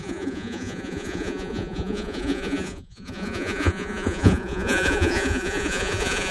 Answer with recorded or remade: remade